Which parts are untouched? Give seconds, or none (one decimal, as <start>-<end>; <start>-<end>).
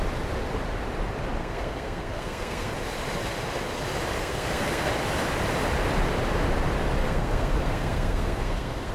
0.0-1.4; 2.7-4.2; 4.9-7.0